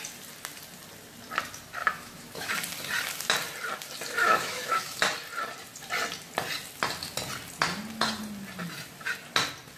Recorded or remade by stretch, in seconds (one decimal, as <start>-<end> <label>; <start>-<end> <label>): 0.0-1.8 recorded; 1.8-2.5 remade; 2.5-4.2 recorded; 4.2-5.0 remade; 5.0-9.8 recorded